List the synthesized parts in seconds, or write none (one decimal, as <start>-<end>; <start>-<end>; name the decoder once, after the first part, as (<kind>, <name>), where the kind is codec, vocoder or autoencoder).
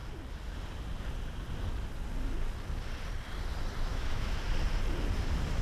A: 3.9-4.4 (autoencoder, DAC-VAE)